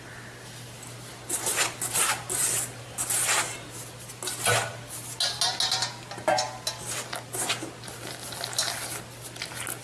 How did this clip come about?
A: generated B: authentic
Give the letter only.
B